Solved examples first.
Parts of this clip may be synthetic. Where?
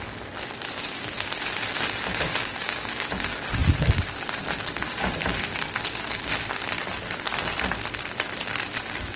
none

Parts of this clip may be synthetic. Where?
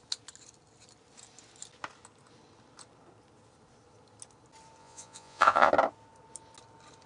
4.8-5.7 (vocoder, Vocos)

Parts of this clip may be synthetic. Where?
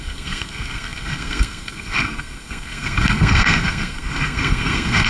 0.0-5.1 (codec, SNAC)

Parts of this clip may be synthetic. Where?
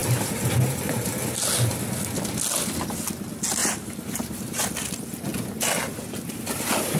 0.0-1.1 (vocoder, BigVGAN v2); 3.6-4.7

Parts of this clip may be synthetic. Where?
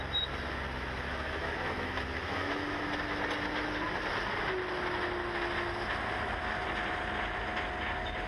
1.1-2.8 (autoencoder, DAC-VAE)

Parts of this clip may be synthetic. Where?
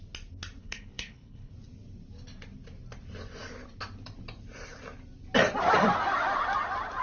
0.6-1.5 (codec, HILCodec)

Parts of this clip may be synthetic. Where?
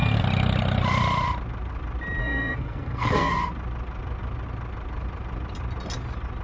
2.2-3.3 (codec, SNAC)